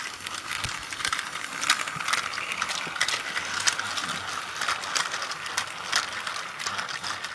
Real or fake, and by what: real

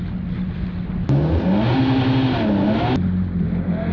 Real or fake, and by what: real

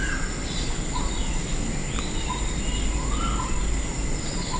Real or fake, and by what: real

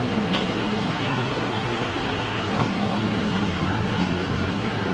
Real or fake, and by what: fake, codec, SNAC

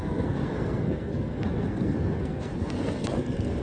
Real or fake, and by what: fake, codec, SNAC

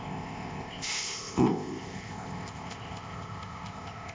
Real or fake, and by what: fake, codec, ZipCodec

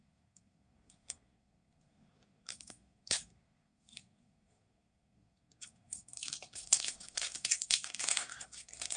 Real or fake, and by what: fake, codec, SNAC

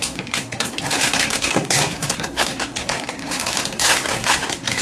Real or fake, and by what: fake, codec, SNAC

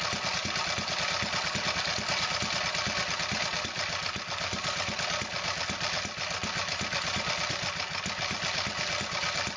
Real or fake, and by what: real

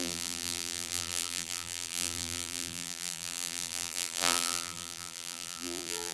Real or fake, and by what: fake, vocoder, BigVGAN v2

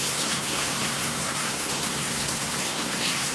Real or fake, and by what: fake, codec, SNAC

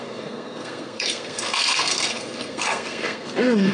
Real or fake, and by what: fake, codec, SNAC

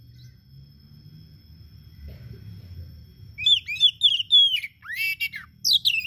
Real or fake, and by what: real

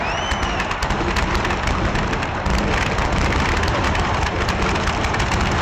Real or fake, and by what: real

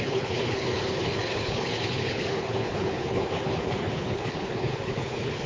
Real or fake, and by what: fake, codec, HILCodec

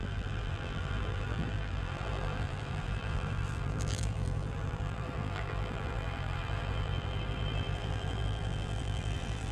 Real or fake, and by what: fake, vocoder, BigVGAN v2